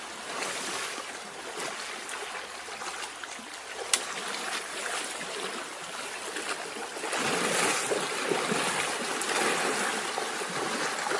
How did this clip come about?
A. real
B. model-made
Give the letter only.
A